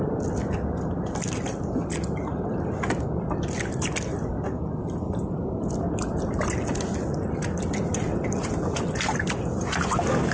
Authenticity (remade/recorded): recorded